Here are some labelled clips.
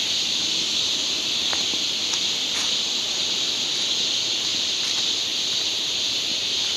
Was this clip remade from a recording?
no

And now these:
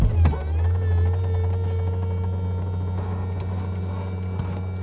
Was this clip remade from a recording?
no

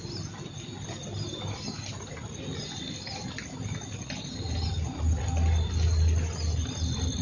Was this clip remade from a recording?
no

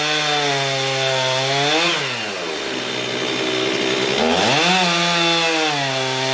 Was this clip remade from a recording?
no